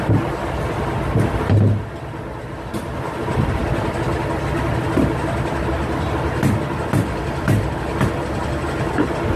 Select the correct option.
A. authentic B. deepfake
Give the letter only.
A